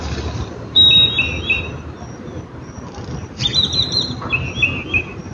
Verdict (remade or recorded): recorded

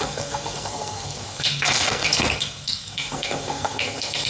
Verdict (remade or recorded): remade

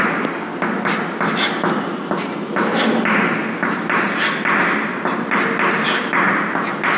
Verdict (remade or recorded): recorded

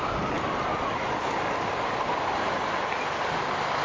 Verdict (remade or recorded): recorded